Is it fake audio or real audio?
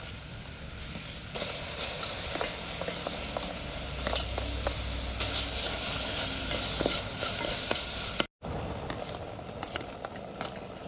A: real